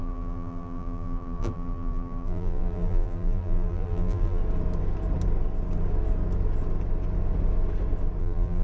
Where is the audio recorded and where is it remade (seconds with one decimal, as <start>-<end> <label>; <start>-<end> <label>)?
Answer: 0.0-4.4 remade; 4.4-8.2 recorded; 8.2-8.6 remade